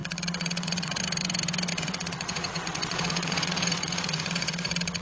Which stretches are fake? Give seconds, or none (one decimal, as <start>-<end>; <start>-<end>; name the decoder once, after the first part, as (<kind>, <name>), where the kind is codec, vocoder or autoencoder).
0.0-1.0 (vocoder, WaveNeXt); 1.7-5.0